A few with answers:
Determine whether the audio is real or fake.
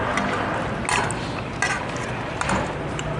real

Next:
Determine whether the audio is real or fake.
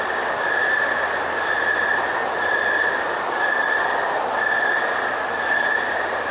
real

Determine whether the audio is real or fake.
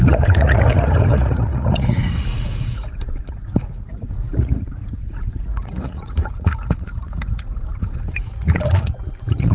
fake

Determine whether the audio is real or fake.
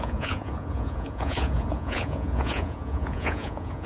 fake